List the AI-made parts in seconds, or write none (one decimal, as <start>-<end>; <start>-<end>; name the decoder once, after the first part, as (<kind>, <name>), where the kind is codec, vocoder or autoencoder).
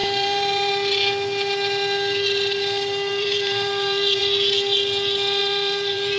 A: 0.0-0.7 (vocoder, BigVGAN v2); 3.1-4.2; 5.4-6.2